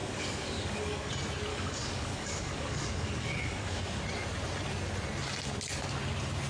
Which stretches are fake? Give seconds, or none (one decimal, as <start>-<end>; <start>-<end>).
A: 0.0-1.1; 1.5-4.0